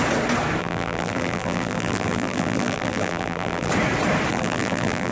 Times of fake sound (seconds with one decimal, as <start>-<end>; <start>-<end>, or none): 0.6-3.7; 4.3-5.1